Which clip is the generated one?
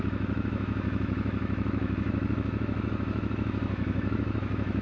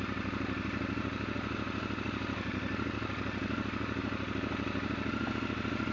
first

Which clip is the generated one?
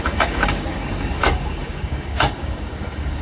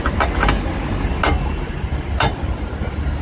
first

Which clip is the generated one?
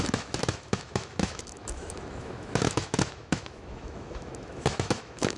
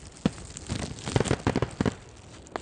first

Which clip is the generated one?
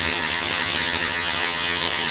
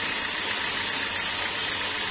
first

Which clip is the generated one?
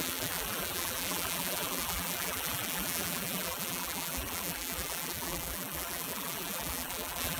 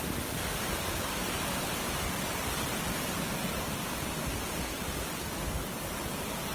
first